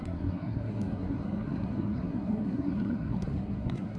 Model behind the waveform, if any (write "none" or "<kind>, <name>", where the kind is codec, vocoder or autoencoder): codec, SNAC